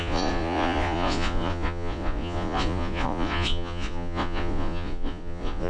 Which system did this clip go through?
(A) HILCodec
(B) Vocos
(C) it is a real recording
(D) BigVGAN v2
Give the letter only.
B